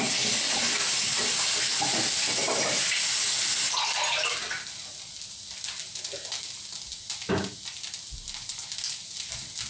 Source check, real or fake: real